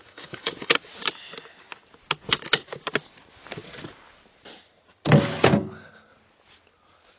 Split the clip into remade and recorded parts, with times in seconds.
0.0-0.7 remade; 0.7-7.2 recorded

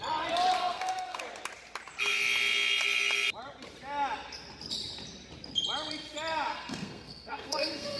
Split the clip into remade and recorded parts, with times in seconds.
0.0-0.6 recorded; 0.6-1.2 remade; 1.2-6.5 recorded; 6.5-8.0 remade

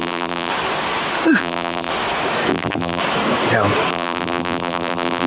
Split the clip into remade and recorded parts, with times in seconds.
0.0-0.5 remade; 0.5-1.4 recorded; 1.4-1.9 remade; 1.9-2.5 recorded; 2.5-3.0 remade; 3.0-3.9 recorded; 3.9-5.3 remade

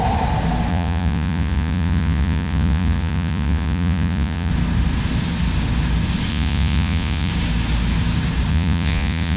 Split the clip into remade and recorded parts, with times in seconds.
0.0-0.7 recorded; 0.7-4.5 remade; 4.5-6.3 recorded; 6.3-7.3 remade; 7.3-8.5 recorded; 8.5-9.4 remade